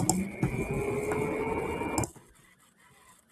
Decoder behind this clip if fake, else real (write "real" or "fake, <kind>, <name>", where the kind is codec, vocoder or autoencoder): real